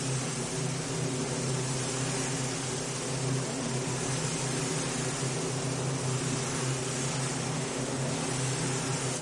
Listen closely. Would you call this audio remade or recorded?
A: recorded